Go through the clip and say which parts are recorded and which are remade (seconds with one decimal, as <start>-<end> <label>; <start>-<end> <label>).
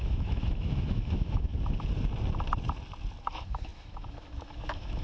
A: 0.0-1.5 remade; 1.5-3.2 recorded; 3.2-5.0 remade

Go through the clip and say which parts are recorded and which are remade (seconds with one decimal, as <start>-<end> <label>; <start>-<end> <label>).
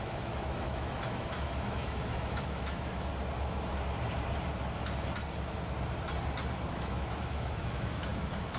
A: 0.0-3.1 remade; 3.1-6.7 recorded; 6.7-8.6 remade